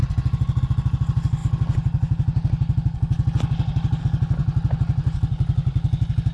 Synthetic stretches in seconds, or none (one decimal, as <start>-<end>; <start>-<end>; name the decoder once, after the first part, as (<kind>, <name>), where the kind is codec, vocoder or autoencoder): none